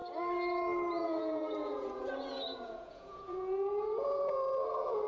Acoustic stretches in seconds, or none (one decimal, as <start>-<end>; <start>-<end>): 0.0-0.9